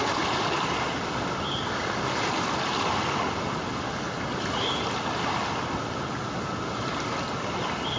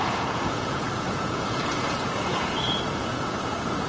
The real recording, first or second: first